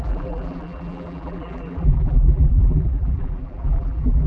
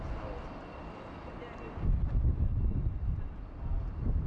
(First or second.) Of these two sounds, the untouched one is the second